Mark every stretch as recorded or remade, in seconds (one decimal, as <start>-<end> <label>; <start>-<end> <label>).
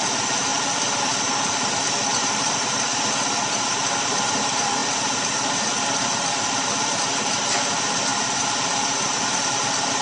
0.0-8.1 remade; 8.1-8.6 recorded; 8.6-10.0 remade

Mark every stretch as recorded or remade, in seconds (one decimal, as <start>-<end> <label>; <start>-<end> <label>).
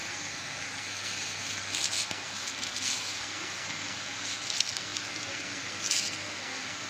0.0-6.9 remade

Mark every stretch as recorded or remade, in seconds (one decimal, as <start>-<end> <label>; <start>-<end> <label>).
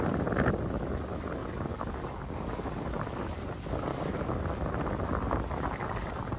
0.0-1.4 recorded; 1.4-3.3 remade; 3.3-3.9 recorded; 3.9-4.4 remade; 4.4-6.4 recorded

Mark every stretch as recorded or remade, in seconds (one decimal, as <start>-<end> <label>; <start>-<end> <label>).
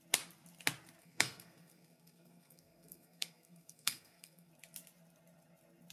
0.0-1.0 recorded; 1.0-4.5 remade; 4.5-5.9 recorded